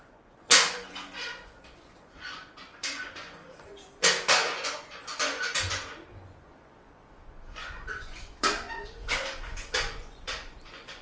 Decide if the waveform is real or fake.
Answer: fake